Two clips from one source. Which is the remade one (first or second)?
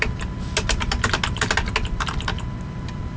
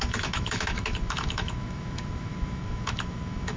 second